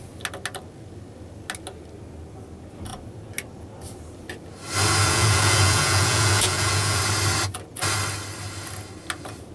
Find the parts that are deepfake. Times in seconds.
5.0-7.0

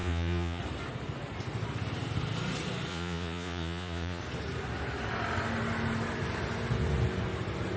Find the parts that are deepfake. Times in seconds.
0.0-0.6; 2.9-4.2

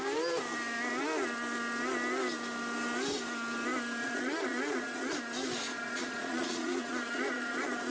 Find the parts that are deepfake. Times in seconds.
4.0-5.1; 5.7-7.9

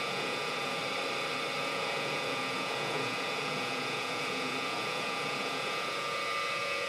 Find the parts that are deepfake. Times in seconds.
0.0-0.8; 1.6-6.9

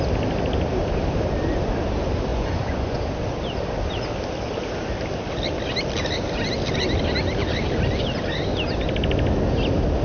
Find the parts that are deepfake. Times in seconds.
2.3-3.0

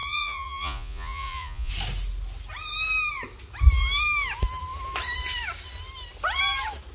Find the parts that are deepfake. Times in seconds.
0.0-1.7